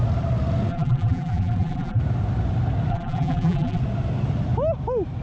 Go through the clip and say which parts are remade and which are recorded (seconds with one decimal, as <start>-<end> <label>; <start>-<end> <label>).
0.0-0.7 recorded; 0.7-2.0 remade; 2.0-2.9 recorded; 2.9-3.8 remade; 3.8-5.2 recorded